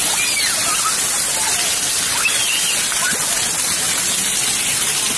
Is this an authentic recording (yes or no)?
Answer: yes